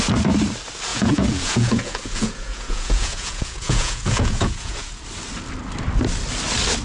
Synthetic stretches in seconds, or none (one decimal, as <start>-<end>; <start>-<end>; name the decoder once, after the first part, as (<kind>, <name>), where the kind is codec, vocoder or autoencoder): 0.9-5.0 (vocoder, Vocos)